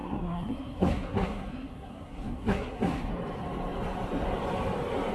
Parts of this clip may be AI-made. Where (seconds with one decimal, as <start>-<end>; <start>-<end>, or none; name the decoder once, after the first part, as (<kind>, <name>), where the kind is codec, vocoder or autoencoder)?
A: 0.0-3.1 (codec, SNAC)